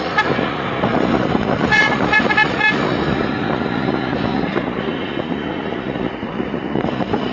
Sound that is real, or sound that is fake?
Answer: fake